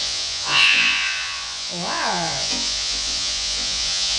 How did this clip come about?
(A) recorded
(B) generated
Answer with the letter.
B